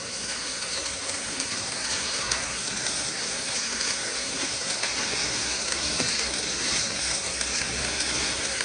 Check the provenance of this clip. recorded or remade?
remade